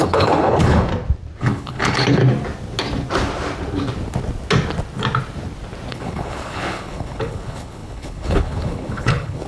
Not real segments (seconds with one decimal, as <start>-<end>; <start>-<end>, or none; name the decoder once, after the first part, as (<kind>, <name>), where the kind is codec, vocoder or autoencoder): 0.0-0.9 (codec, HILCodec); 1.4-2.2; 5.9-9.5